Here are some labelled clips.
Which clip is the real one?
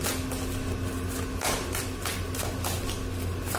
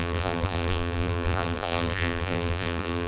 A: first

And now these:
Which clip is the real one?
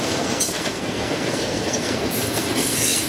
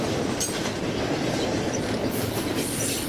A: second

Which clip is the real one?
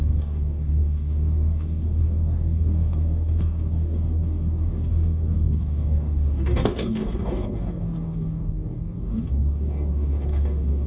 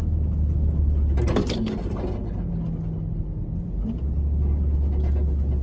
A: second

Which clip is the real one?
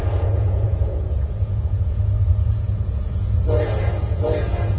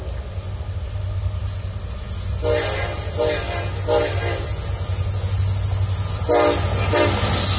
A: second